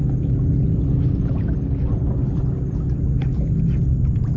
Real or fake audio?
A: real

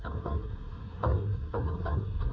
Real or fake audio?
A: fake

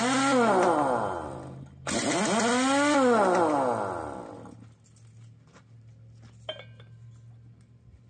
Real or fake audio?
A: real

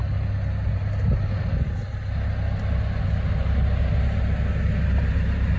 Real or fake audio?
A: real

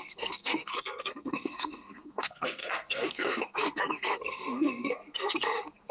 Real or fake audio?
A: fake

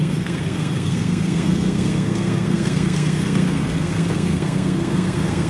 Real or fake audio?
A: fake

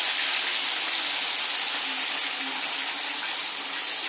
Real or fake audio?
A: real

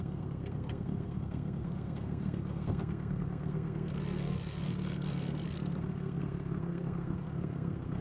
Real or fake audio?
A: fake